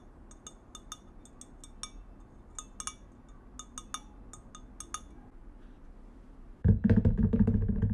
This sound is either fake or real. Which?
real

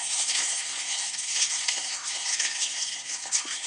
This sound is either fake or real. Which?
fake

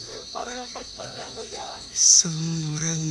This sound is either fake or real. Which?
fake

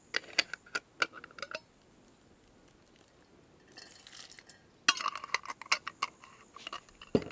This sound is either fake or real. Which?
real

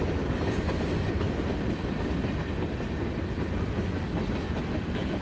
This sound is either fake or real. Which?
real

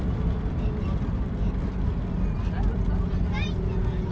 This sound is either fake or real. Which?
real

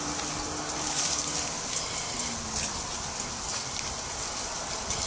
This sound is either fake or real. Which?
real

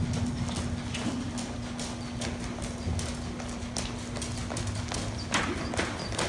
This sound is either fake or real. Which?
real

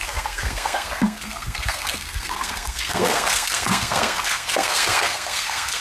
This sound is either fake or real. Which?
fake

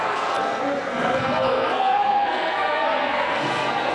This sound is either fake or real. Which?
fake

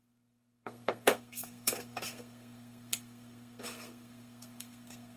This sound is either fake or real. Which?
fake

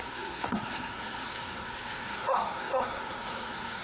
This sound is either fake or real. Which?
fake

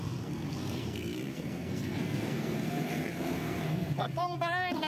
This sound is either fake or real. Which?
fake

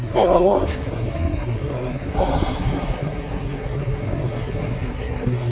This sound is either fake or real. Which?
fake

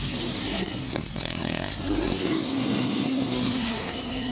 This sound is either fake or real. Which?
fake